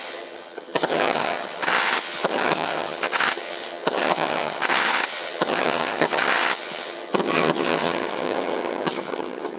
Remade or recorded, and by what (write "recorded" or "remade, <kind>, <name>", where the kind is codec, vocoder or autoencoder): remade, vocoder, HiFi-GAN